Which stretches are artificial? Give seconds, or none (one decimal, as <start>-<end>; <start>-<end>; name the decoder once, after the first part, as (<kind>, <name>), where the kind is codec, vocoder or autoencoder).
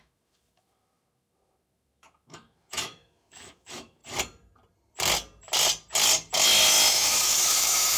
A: 0.0-4.0 (autoencoder, DAC-VAE); 6.9-8.0